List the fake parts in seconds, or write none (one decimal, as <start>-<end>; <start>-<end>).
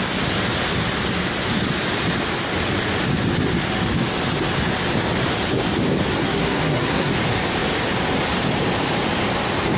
6.1-7.1